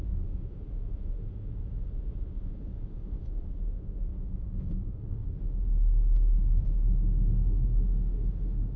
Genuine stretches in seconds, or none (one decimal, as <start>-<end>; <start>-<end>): none